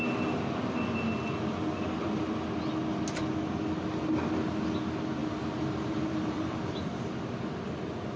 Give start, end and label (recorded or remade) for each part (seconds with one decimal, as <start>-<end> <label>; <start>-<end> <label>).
0.0-5.2 recorded; 5.2-7.0 remade; 7.0-8.2 recorded